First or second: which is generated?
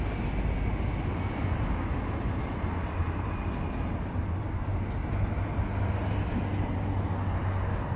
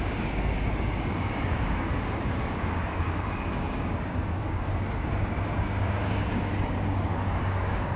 second